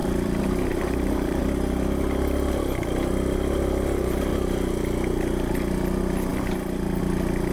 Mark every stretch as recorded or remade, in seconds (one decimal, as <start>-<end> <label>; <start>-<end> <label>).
0.0-1.4 remade; 1.4-7.5 recorded